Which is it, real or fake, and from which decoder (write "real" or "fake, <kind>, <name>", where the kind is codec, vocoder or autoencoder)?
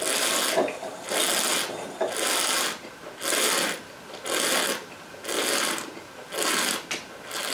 real